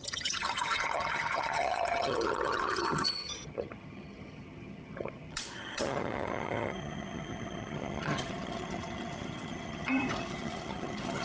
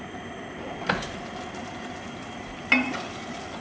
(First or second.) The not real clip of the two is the first